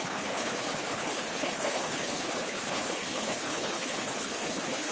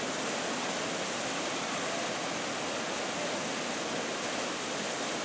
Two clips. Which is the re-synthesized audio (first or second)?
first